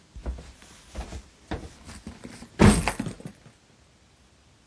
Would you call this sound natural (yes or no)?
yes